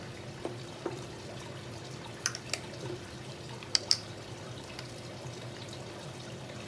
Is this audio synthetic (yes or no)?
yes